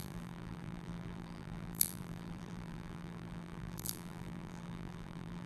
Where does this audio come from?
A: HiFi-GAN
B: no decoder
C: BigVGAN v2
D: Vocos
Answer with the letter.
C